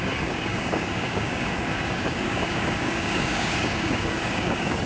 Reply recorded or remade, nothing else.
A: remade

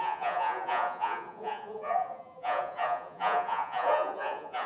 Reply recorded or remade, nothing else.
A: remade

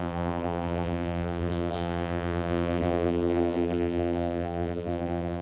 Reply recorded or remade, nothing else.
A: remade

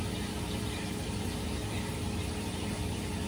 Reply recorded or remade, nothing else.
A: recorded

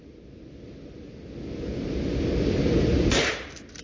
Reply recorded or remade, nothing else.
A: recorded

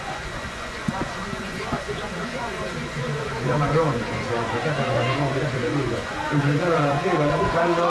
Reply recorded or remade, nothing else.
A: remade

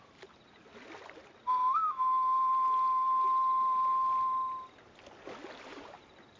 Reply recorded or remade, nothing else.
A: recorded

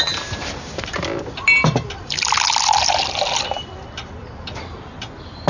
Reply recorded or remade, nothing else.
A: recorded